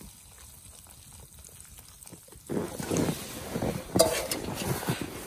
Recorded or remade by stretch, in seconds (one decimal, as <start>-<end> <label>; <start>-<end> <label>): 0.0-5.3 recorded